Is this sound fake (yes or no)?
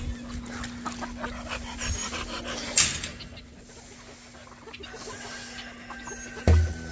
no